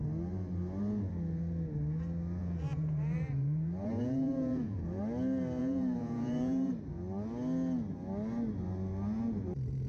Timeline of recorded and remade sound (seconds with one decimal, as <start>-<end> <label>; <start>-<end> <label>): 0.0-2.4 recorded; 2.4-5.0 remade; 5.0-5.6 recorded; 5.6-6.7 remade; 6.7-9.9 recorded